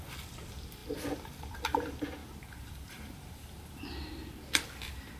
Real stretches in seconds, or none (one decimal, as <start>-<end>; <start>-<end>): 0.0-2.2; 3.8-5.2